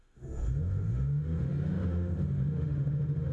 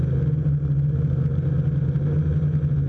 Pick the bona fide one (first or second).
second